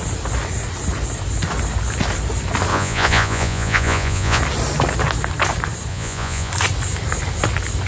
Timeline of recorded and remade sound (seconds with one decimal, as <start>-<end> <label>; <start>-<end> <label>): 0.0-2.7 recorded; 2.7-4.4 remade; 4.4-5.9 recorded; 5.9-6.5 remade; 6.5-7.9 recorded